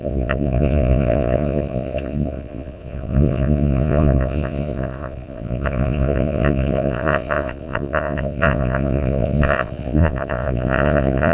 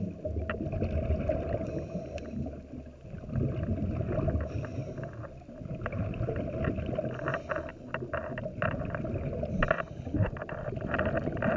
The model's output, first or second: first